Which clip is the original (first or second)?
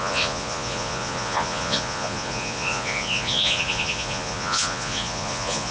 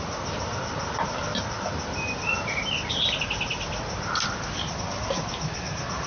second